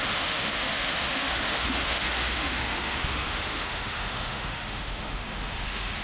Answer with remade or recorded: remade